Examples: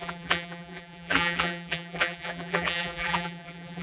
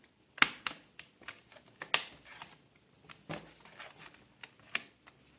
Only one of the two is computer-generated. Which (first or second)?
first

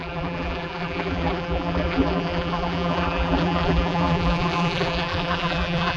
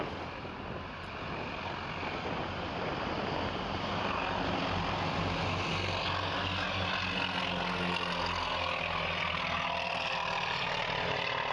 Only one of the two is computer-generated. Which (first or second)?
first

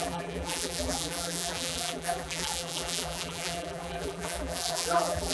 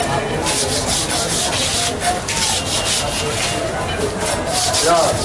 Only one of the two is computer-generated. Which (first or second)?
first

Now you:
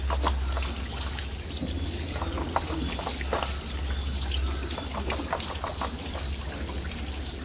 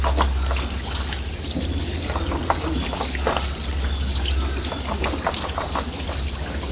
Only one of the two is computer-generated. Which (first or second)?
second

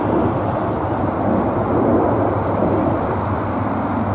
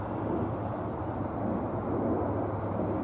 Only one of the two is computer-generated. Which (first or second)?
first